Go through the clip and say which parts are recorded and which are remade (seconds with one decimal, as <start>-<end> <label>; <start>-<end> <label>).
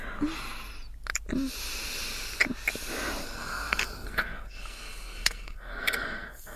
0.0-3.2 recorded; 3.2-6.6 remade